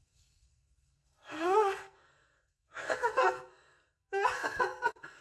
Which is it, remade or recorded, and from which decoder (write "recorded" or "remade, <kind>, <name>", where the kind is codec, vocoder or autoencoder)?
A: remade, codec, SNAC